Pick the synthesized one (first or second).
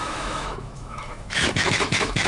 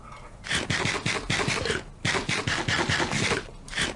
first